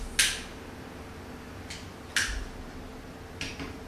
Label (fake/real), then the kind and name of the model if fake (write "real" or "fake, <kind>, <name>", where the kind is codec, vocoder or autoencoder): real